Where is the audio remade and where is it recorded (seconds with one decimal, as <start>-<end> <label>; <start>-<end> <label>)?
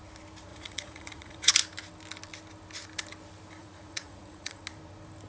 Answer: 0.0-0.5 recorded; 0.5-1.5 remade; 1.5-3.6 recorded; 3.6-4.6 remade; 4.6-5.3 recorded